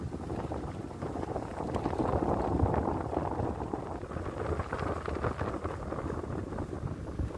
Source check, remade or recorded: recorded